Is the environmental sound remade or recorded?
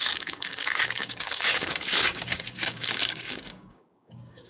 remade